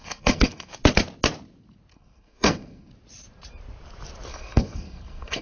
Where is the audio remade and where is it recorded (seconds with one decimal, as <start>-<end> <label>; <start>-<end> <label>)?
0.0-0.7 remade; 0.7-1.9 recorded; 1.9-2.9 remade; 2.9-4.3 recorded; 4.3-5.4 remade